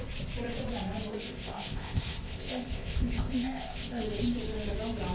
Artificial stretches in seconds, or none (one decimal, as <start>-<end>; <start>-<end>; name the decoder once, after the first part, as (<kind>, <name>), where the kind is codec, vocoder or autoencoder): 1.1-4.0 (codec, ZipCodec)